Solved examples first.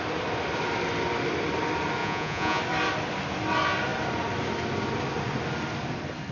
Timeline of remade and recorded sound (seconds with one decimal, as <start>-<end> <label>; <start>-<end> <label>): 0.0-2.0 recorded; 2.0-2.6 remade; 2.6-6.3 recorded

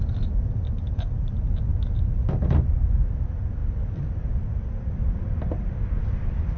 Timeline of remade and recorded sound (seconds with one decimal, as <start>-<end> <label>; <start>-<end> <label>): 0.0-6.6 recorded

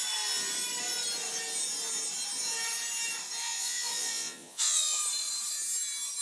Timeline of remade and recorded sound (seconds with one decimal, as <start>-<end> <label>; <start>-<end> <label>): 0.0-3.4 recorded; 3.4-5.0 remade; 5.0-6.2 recorded

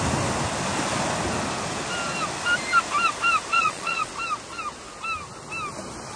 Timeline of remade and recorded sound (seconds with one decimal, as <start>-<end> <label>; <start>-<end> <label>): 0.0-3.5 recorded; 3.5-4.1 remade; 4.1-6.2 recorded

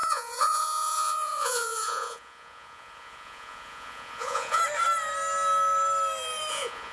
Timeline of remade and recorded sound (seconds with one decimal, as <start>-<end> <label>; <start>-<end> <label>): 0.0-4.6 remade; 4.6-6.5 recorded; 6.5-6.9 remade

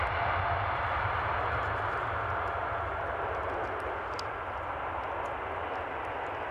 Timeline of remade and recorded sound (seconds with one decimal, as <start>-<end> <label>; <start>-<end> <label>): 0.0-6.5 recorded

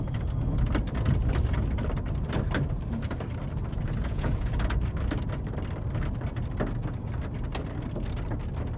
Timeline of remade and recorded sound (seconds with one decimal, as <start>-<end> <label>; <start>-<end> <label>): 0.0-4.0 recorded; 4.0-4.5 remade; 4.5-8.8 recorded

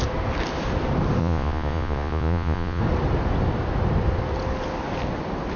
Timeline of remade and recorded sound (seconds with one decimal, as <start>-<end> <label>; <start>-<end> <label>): 0.0-1.2 recorded; 1.2-2.8 remade; 2.8-5.6 recorded